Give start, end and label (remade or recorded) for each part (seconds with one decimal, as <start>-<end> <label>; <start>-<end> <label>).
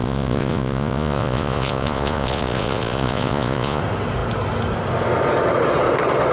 0.0-3.8 remade; 3.8-6.3 recorded